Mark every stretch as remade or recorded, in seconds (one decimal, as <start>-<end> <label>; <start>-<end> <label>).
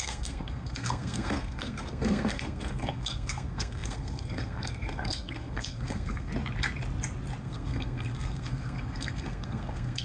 0.0-6.3 remade; 6.3-7.4 recorded; 7.4-10.0 remade